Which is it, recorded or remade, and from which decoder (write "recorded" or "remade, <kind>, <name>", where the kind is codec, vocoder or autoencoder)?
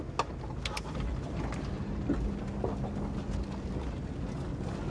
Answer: recorded